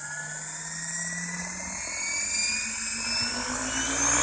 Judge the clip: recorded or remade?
recorded